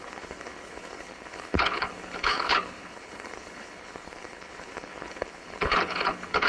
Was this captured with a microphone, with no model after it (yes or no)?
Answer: no